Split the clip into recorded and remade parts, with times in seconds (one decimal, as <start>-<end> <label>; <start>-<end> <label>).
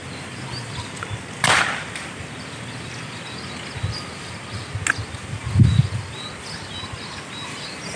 0.0-8.0 recorded